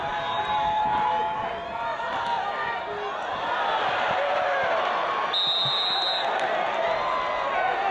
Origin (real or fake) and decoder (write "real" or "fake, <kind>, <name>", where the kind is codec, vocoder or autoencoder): real